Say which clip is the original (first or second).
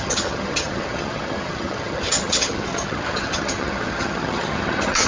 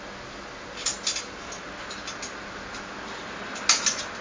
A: second